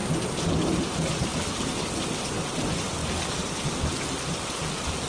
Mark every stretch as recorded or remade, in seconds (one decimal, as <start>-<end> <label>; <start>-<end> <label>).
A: 0.0-1.3 remade; 1.3-1.8 recorded; 1.8-3.0 remade; 3.0-5.1 recorded

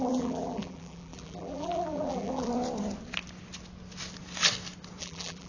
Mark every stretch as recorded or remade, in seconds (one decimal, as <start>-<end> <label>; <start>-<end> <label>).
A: 0.0-2.5 remade; 2.5-5.0 recorded; 5.0-5.5 remade